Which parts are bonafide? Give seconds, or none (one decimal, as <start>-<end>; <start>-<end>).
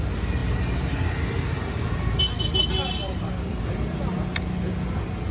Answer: 0.0-5.3